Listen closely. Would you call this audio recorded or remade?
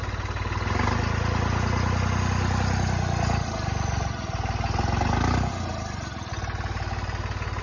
recorded